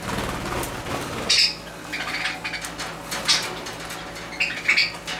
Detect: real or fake real